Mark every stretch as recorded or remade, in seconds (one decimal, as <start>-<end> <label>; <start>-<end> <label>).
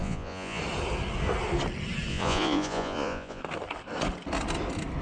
0.0-0.6 remade; 0.6-2.1 recorded; 2.1-3.4 remade; 3.4-5.0 recorded